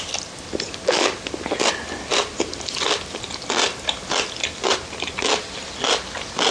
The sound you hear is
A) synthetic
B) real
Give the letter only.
B